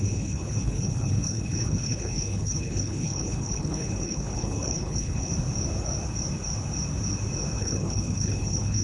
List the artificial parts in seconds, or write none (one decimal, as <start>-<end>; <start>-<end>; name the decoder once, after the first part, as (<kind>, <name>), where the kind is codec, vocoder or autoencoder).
0.0-5.3 (codec, HILCodec); 7.5-8.8